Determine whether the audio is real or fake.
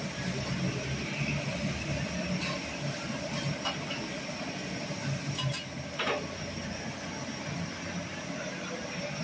real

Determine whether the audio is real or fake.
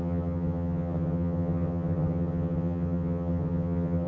fake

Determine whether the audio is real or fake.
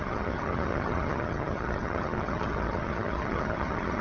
fake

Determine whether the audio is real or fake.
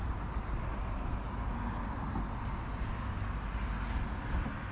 real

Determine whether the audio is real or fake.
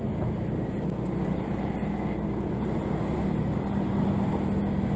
real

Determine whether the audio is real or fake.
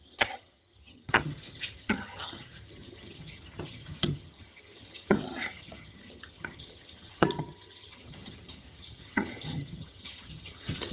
fake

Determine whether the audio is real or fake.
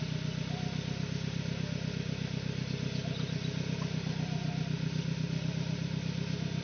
real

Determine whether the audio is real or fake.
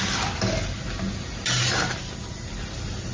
real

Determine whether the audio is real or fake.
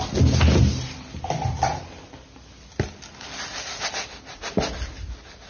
real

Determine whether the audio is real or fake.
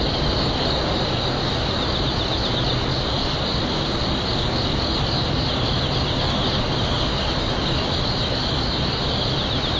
real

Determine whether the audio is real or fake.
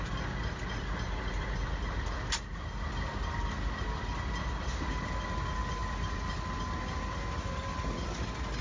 real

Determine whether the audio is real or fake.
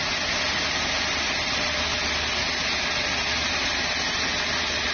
real